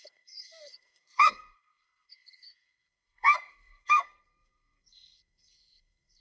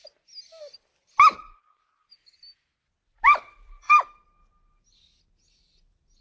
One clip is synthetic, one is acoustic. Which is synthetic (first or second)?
first